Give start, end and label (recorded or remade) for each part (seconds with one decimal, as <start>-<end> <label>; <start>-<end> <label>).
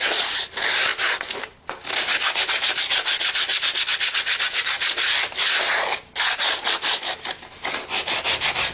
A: 0.0-8.7 recorded